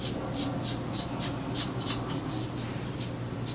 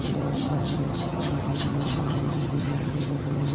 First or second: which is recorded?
first